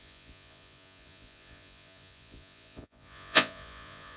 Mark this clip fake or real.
fake